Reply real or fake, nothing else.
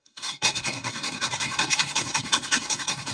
fake